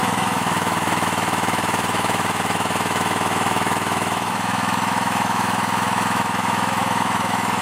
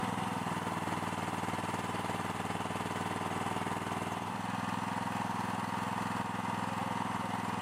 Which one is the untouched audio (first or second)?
second